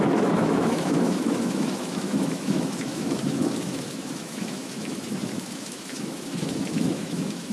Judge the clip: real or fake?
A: fake